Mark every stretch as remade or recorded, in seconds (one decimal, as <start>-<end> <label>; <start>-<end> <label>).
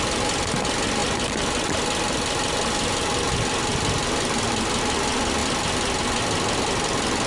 0.0-7.3 recorded